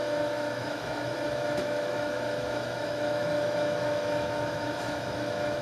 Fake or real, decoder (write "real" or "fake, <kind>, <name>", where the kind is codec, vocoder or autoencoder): fake, autoencoder, DAC-VAE